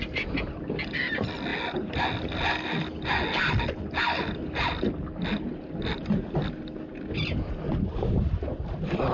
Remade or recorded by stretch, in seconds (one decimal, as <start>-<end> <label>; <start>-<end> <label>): 0.0-9.1 recorded